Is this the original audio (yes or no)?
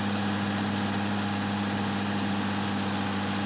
yes